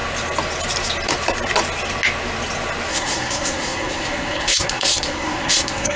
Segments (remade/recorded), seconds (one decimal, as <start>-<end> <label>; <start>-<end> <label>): 0.0-2.9 recorded; 2.9-6.0 remade